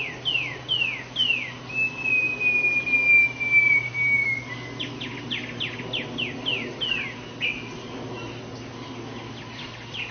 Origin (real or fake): real